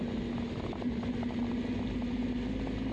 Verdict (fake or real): real